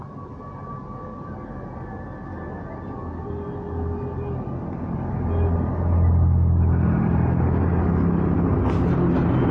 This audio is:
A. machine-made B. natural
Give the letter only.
B